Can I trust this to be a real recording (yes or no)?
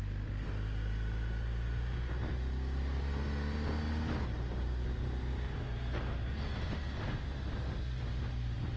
yes